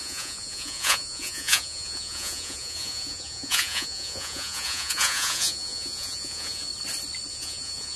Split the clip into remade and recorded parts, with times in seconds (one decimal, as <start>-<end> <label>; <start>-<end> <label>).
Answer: 0.0-6.7 remade; 6.7-7.3 recorded; 7.3-8.0 remade